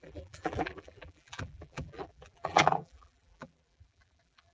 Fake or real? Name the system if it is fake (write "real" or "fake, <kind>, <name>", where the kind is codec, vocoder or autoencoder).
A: fake, vocoder, BigVGAN v2